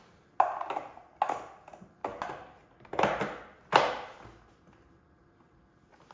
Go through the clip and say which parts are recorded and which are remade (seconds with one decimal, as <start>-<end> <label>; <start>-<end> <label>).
0.0-6.1 recorded

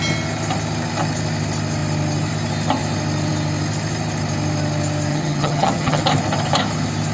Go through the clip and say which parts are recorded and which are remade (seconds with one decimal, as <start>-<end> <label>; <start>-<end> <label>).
0.0-5.1 recorded; 5.1-6.0 remade; 6.0-7.1 recorded